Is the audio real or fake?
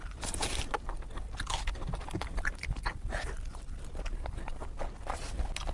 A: real